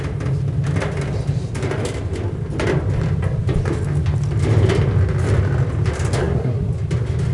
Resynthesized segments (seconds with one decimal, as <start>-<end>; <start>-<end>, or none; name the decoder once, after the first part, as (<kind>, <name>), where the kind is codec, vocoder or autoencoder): 6.2-6.7 (codec, SNAC)